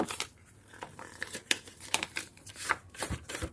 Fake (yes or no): yes